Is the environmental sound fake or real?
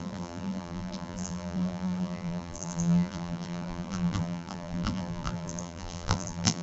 fake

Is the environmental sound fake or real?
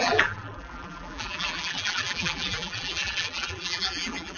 fake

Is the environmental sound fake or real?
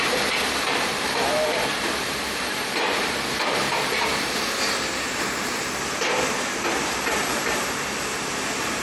fake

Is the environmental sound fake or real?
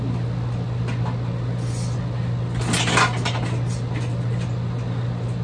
real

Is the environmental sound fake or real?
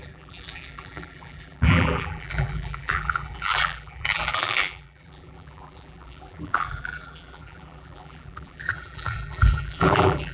fake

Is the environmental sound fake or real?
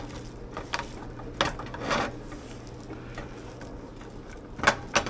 real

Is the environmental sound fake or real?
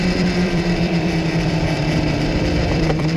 fake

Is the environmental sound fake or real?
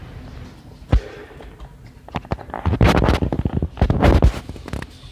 real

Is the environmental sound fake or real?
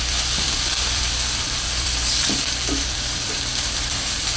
fake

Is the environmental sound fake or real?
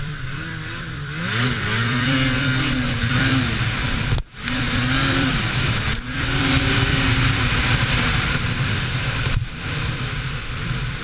fake